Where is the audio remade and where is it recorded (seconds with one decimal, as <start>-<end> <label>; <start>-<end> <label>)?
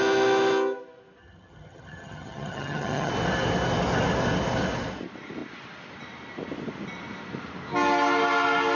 0.0-1.2 recorded; 1.2-3.1 remade; 3.1-8.7 recorded